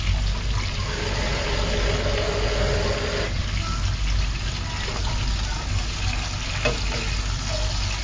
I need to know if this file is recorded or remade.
recorded